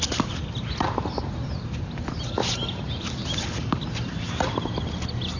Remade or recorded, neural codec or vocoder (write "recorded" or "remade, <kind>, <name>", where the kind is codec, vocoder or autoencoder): recorded